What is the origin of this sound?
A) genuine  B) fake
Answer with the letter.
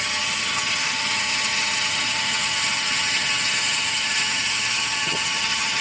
B